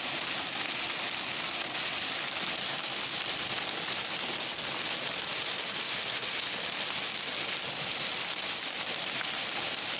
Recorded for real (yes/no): yes